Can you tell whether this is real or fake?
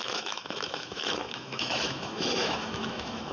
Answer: fake